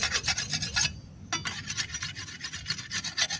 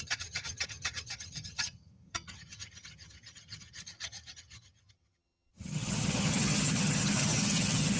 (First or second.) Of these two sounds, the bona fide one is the first